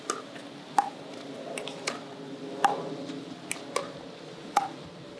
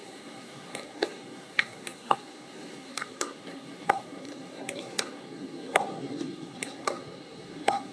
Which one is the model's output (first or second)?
second